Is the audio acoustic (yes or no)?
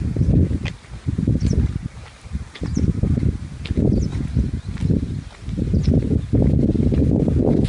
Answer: yes